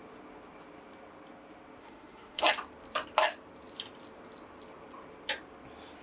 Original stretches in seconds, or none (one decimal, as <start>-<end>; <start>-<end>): 0.0-1.8; 2.4-6.0